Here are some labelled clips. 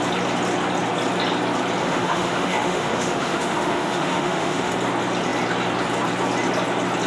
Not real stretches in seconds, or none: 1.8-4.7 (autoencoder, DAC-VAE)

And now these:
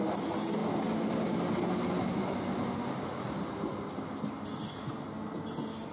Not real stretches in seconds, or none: none

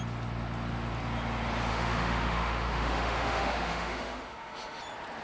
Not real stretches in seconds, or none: 1.7-4.8 (autoencoder, DAC-VAE)

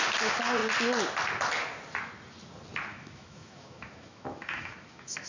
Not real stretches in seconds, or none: 2.9-5.3 (autoencoder, DAC-VAE)

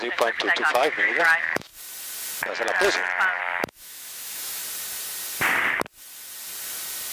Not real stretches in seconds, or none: 0.0-1.7 (autoencoder, DAC-VAE); 3.4-4.6

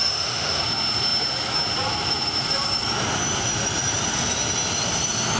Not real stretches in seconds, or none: 0.0-0.6 (autoencoder, DAC-VAE)

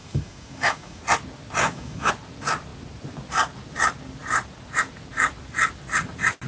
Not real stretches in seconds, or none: 0.0-1.0 (autoencoder, DAC-VAE); 1.6-2.1

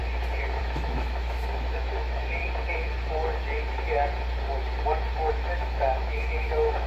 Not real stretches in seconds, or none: 0.6-2.4 (autoencoder, DAC-VAE); 5.3-6.9